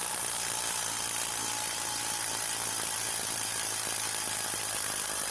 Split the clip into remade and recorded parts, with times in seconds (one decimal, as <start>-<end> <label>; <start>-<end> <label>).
0.0-5.3 recorded